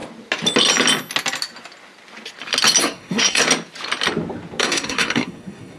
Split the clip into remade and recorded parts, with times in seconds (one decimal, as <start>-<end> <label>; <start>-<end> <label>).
0.0-2.8 recorded; 2.8-3.4 remade; 3.4-4.6 recorded; 4.6-5.8 remade